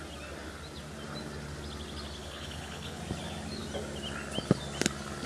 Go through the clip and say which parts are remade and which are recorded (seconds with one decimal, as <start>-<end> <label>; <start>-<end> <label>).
0.0-2.2 recorded; 2.2-3.0 remade; 3.0-5.3 recorded